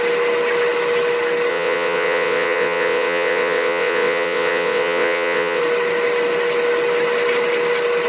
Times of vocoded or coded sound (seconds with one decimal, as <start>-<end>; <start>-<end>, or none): 1.5-5.6